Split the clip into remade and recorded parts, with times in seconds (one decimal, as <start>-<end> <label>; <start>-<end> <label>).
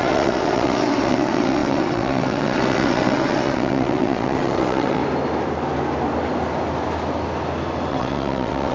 0.0-5.0 remade; 5.0-7.9 recorded; 7.9-8.7 remade